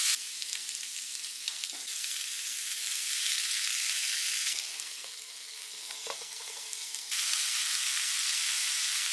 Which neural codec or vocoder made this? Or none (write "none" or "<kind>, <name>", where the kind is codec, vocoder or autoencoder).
codec, SNAC